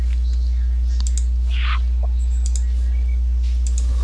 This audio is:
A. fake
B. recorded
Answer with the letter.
B